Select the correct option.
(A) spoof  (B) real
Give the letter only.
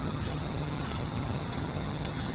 A